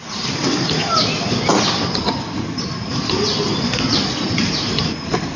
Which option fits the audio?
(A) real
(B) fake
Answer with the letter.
A